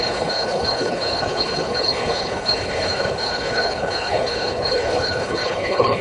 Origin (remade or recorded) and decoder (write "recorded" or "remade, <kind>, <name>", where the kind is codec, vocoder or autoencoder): remade, codec, HILCodec